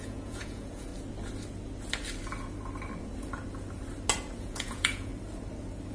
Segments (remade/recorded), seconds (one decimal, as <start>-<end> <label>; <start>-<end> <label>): 0.0-0.9 remade; 0.9-4.4 recorded; 4.4-5.1 remade; 5.1-5.9 recorded